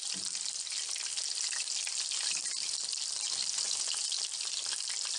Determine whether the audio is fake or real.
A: real